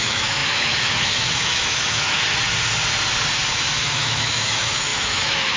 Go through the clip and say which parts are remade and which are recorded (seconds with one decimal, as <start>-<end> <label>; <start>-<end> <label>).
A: 0.0-2.2 remade; 2.2-3.8 recorded; 3.8-5.6 remade